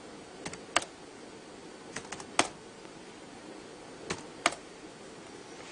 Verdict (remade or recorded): recorded